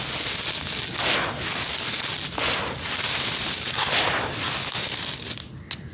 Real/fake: real